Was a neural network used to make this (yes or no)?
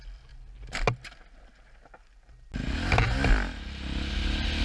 no